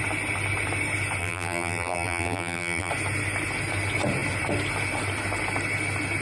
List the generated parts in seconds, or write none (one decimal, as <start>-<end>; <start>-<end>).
1.2-2.9

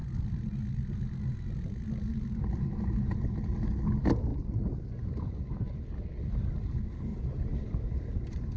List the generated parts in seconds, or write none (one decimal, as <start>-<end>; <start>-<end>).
2.1-3.5; 7.1-8.6

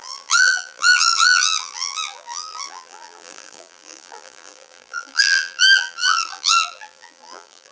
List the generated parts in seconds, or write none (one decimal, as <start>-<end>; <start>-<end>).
0.0-7.7

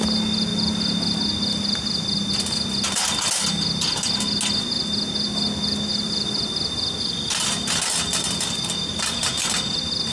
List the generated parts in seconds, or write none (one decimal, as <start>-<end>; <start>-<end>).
5.9-9.3

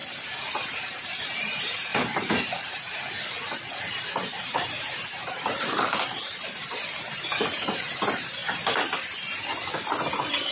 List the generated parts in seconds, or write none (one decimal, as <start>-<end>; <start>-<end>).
0.7-1.9; 3.7-8.4; 10.1-10.5

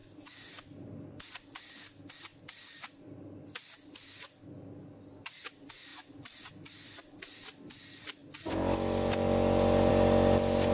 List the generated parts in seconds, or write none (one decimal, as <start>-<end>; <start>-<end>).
0.0-1.2; 5.9-6.5